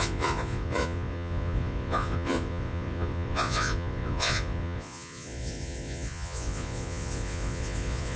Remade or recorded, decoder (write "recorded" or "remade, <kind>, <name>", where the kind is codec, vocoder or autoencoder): remade, vocoder, Vocos